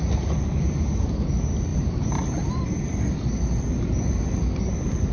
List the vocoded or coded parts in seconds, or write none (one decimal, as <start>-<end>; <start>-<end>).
none